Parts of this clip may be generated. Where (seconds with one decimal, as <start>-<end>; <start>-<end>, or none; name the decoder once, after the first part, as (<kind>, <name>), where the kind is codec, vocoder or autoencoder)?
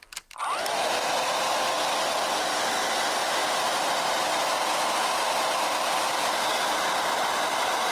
none